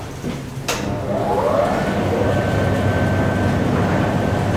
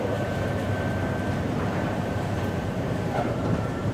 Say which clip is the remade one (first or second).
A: second